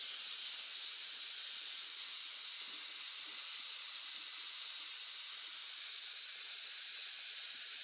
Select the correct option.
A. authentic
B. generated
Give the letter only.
A